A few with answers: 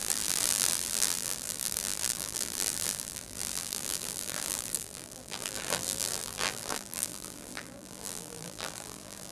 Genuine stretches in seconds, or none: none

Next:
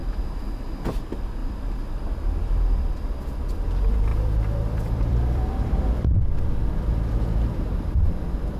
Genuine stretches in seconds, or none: 0.0-1.4; 2.9-4.1; 5.9-8.6

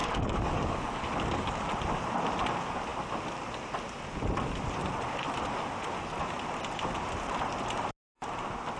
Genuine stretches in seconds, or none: 1.7-8.8

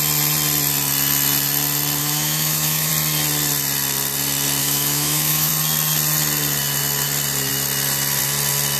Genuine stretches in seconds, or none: 0.0-2.0; 2.9-4.6; 5.5-8.8